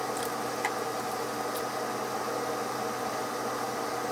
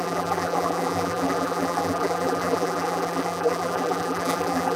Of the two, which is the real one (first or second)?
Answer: first